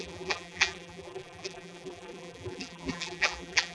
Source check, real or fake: fake